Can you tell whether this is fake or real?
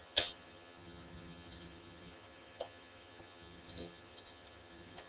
fake